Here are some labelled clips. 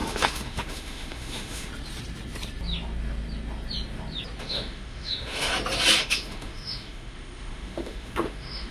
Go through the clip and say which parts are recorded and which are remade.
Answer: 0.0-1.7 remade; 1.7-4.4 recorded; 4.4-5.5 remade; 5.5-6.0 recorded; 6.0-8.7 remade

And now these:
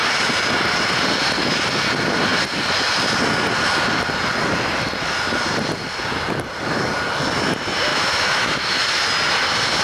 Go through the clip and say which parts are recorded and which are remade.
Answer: 0.0-7.9 recorded; 7.9-8.8 remade; 8.8-9.8 recorded

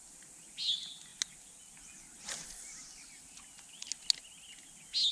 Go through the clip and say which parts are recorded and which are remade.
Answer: 0.0-5.1 recorded

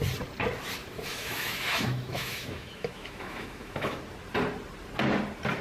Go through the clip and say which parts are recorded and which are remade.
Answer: 0.0-0.8 recorded; 0.8-4.0 remade; 4.0-5.6 recorded

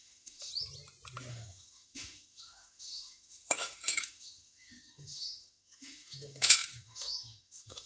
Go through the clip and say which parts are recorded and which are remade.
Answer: 0.0-0.5 remade; 0.5-1.3 recorded; 1.3-7.9 remade